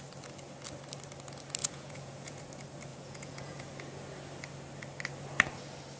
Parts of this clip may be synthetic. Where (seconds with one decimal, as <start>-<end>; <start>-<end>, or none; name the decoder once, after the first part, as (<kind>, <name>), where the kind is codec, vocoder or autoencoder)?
1.6-2.4 (vocoder, Vocos); 2.9-3.7